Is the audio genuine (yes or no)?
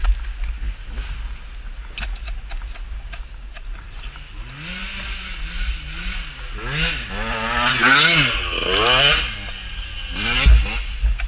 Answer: yes